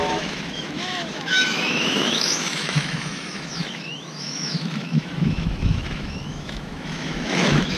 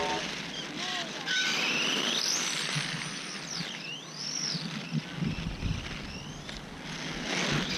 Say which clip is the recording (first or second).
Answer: second